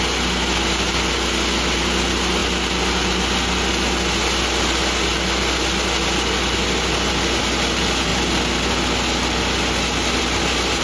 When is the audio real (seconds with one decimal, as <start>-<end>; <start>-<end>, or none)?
0.0-10.8